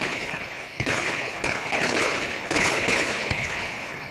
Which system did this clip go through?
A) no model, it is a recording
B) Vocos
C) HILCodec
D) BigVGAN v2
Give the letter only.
C